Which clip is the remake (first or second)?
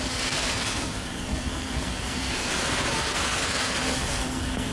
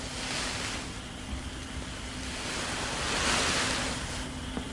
first